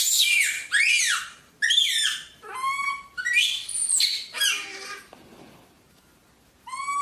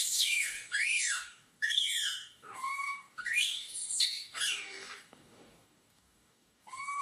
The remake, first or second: second